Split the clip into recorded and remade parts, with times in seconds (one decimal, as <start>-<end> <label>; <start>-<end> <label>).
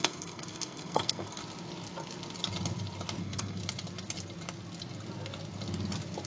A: 0.0-1.4 remade; 1.4-3.2 recorded; 3.2-3.6 remade; 3.6-6.3 recorded